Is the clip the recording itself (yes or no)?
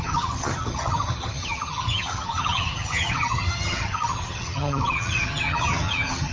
no